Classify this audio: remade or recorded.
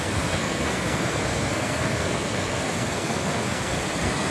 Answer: remade